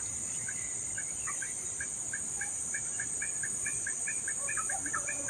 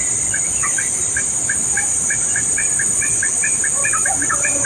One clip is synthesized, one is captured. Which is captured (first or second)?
first